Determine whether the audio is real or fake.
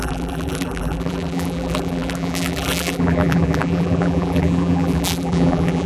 fake